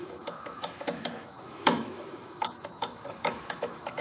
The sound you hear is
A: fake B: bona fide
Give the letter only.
A